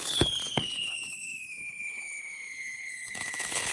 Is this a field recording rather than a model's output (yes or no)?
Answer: no